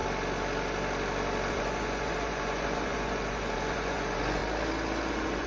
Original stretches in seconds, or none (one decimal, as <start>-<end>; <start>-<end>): 0.0-1.5; 4.4-5.1